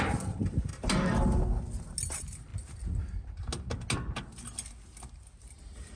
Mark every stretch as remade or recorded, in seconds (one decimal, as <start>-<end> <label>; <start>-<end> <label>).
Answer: 0.0-0.7 remade; 0.7-2.1 recorded; 2.1-2.5 remade; 2.5-5.4 recorded; 5.4-6.0 remade